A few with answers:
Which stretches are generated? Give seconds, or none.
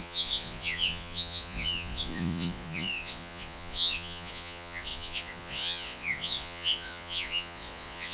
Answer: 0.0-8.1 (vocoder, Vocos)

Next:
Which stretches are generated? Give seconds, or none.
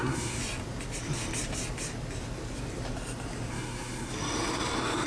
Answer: 0.0-0.4 (codec, SNAC); 3.5-4.1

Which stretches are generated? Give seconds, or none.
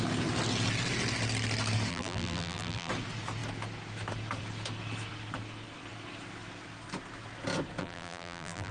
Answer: 1.9-2.9 (vocoder, BigVGAN v2); 7.8-8.7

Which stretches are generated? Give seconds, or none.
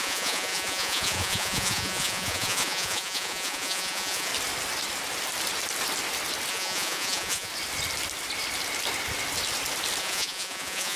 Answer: 0.0-4.3 (vocoder, Vocos); 6.5-7.5; 10.0-11.0